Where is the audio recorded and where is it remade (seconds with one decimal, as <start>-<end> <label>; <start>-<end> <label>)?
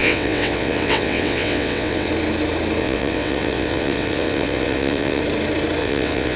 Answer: 0.0-2.1 remade; 2.1-2.8 recorded; 2.8-5.2 remade; 5.2-5.8 recorded; 5.8-6.4 remade